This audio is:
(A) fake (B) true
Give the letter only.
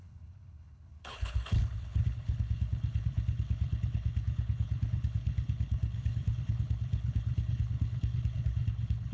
A